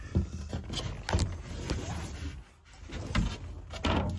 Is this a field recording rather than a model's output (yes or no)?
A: yes